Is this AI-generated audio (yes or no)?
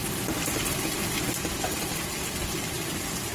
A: no